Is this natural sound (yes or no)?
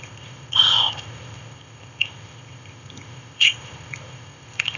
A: no